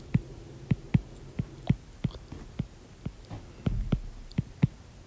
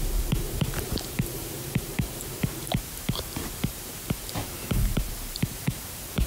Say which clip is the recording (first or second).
first